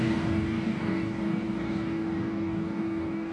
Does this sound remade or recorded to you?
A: remade